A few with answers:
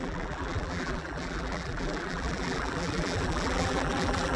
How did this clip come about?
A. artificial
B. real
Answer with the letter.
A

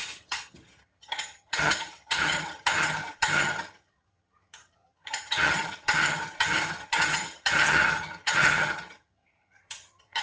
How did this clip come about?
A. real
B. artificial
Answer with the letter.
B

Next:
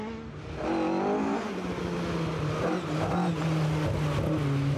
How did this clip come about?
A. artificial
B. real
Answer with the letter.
B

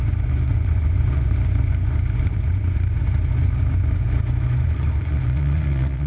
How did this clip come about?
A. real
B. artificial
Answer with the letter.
B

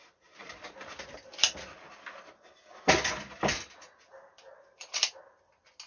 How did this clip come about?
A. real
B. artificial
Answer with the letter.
A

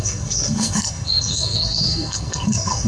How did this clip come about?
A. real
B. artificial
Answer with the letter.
B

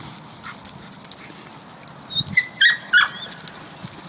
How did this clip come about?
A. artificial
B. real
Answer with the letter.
B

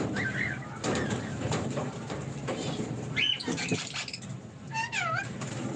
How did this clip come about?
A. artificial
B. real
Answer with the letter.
A